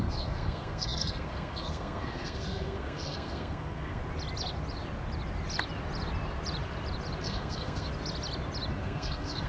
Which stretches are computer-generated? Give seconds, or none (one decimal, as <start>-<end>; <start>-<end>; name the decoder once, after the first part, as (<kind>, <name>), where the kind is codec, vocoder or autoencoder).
0.0-4.0 (codec, SNAC); 7.2-7.9; 8.8-9.5